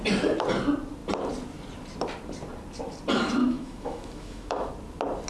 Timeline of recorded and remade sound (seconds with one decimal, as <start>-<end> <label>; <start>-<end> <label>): 0.0-3.4 recorded; 3.4-4.7 remade; 4.7-5.3 recorded

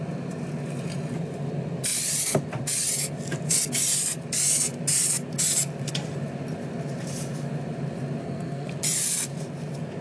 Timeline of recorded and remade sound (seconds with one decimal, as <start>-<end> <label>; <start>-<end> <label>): 0.0-8.2 recorded; 8.2-8.7 remade; 8.7-10.0 recorded